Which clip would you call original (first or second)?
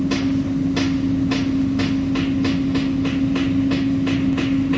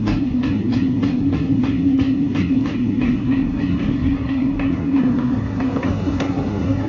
first